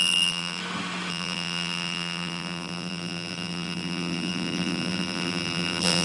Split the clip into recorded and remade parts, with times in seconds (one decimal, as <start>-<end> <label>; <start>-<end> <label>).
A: 0.0-0.6 remade; 0.6-1.1 recorded; 1.1-6.0 remade